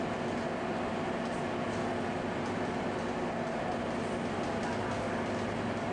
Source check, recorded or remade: recorded